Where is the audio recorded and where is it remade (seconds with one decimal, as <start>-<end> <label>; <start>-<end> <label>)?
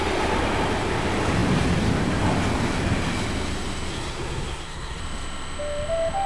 0.0-3.9 recorded; 3.9-5.0 remade; 5.0-6.3 recorded